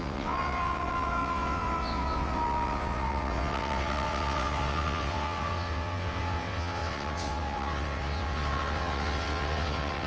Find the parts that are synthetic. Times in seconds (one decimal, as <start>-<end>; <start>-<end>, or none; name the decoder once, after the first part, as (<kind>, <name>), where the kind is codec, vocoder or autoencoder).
0.0-10.1 (vocoder, WaveNeXt)